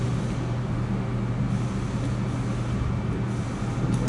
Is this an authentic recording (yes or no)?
yes